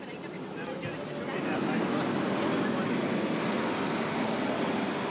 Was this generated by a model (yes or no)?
no